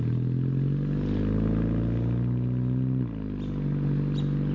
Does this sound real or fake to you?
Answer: real